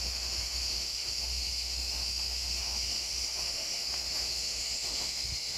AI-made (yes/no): yes